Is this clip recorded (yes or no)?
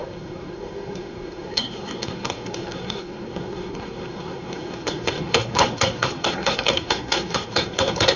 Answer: no